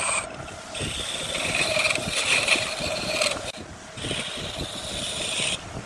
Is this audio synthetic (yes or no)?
no